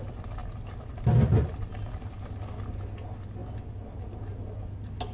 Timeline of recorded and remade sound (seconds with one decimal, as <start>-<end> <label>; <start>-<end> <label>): 0.0-5.1 recorded